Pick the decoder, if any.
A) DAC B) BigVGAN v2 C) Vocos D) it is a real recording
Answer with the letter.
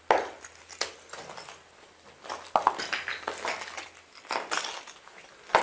D